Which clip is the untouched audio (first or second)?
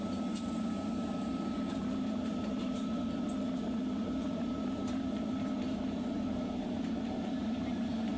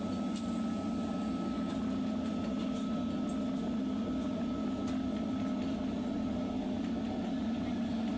second